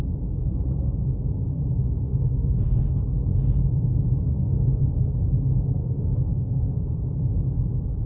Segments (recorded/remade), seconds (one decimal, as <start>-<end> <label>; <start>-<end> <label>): 0.0-2.1 recorded; 2.1-3.0 remade; 3.0-4.3 recorded; 4.3-5.1 remade; 5.1-5.8 recorded; 5.8-7.0 remade; 7.0-8.1 recorded